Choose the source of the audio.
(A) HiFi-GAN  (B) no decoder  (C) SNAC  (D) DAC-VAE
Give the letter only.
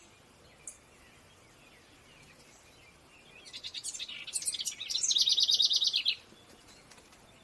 B